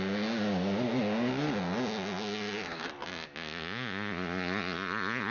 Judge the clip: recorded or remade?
recorded